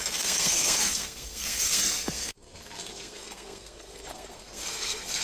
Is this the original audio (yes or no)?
no